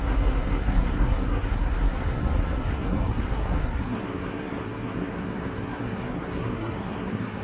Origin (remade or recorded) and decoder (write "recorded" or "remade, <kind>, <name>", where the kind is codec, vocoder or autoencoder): remade, codec, SNAC